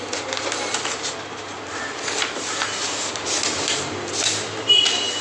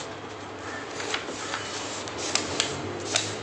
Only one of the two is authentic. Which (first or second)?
second